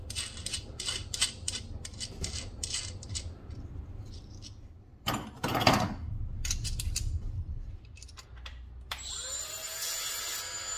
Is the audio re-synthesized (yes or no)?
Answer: yes